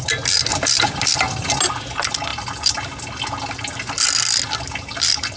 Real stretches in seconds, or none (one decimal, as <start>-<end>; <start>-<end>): 0.0-5.4